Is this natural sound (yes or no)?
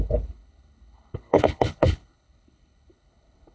no